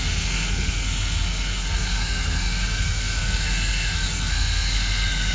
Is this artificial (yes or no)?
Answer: yes